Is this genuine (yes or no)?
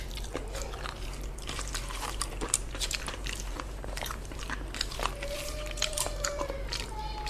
no